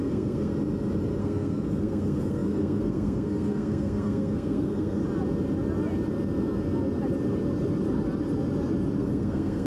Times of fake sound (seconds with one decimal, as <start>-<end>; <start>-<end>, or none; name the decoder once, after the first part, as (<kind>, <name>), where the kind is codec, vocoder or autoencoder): 0.0-0.5 (codec, SNAC); 1.2-5.0; 9.0-9.7